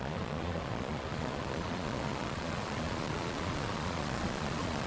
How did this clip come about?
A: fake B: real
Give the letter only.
A